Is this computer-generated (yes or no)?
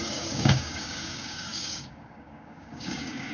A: yes